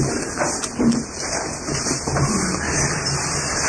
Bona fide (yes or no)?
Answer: yes